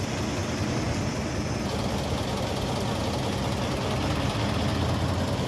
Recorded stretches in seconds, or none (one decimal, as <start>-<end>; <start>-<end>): 0.0-5.5